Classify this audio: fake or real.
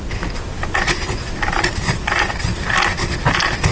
real